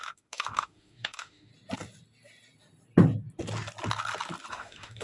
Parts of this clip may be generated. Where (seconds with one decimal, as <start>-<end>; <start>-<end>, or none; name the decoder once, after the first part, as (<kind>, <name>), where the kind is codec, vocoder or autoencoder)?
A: 0.0-1.5 (autoencoder, DAC-VAE); 4.5-5.0

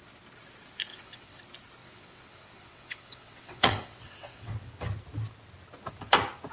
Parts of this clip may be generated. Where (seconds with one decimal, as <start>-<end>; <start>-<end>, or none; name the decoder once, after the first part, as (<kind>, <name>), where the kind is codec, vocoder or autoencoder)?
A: 0.9-1.4 (vocoder, WaveNeXt); 1.8-4.8

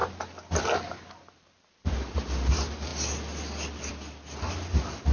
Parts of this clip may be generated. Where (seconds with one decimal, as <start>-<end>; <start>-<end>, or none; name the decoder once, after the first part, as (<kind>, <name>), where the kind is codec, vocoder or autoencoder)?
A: none

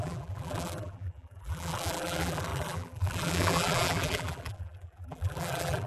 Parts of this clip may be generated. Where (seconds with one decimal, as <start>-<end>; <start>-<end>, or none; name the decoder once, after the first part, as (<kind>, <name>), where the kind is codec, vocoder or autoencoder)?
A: 0.0-5.9 (vocoder, BigVGAN v2)

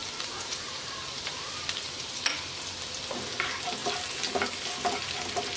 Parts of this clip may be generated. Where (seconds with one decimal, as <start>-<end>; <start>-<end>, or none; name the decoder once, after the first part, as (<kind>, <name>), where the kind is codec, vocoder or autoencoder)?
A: 0.0-2.3 (vocoder, BigVGAN v2)

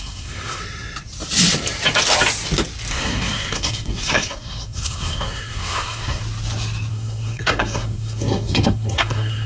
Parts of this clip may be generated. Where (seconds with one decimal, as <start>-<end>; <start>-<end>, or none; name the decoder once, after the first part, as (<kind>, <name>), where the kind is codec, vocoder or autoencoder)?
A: 0.0-0.6 (codec, SNAC); 2.9-6.2; 6.9-9.5

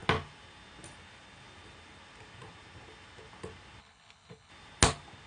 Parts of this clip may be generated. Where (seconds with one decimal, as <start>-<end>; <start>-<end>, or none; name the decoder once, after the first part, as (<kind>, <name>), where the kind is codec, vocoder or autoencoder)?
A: 3.8-4.5 (codec, HILCodec)